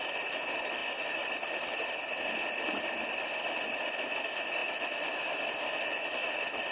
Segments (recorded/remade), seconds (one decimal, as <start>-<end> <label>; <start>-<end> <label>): 0.0-6.7 recorded